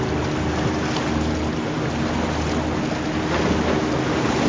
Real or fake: real